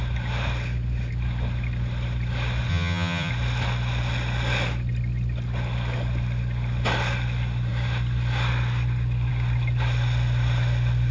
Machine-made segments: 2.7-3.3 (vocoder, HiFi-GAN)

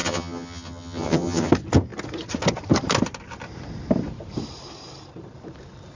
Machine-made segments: 0.0-1.5 (vocoder, HiFi-GAN)

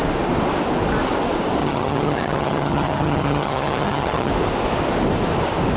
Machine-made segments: 1.6-4.3 (vocoder, HiFi-GAN)

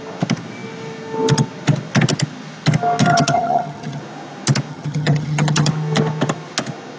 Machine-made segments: 3.1-4.0 (vocoder, HiFi-GAN); 4.7-5.7